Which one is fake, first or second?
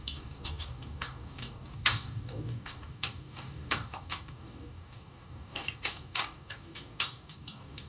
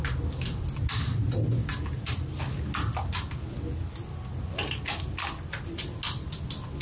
first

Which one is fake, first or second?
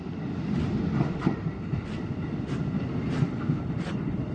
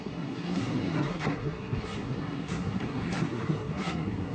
second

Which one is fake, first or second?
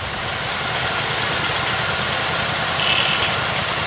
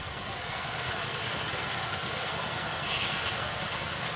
second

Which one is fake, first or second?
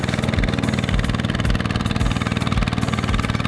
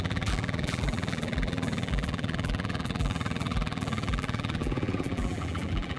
second